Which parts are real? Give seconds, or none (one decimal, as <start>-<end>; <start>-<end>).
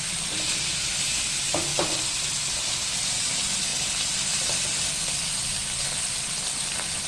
0.0-7.1